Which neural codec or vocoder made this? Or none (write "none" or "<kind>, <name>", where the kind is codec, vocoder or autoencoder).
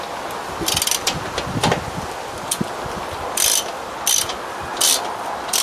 none